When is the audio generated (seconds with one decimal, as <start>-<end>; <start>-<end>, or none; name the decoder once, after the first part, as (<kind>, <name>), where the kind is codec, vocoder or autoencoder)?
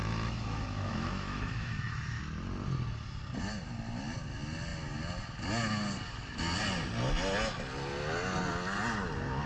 0.0-2.2 (autoencoder, DAC-VAE)